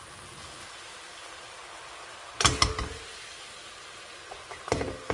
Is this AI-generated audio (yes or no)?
no